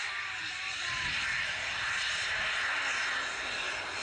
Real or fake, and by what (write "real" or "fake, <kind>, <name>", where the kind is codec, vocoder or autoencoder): real